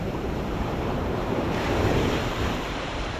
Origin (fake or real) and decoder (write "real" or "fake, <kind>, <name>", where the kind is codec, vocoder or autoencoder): fake, vocoder, BigVGAN v2